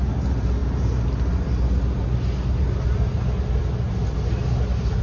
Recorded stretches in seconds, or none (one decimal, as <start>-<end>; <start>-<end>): 0.0-5.0